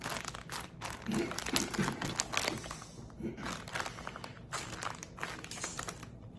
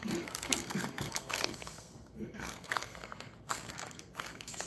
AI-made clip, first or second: second